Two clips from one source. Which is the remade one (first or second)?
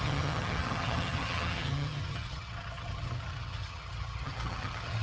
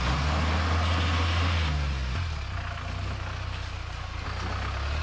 first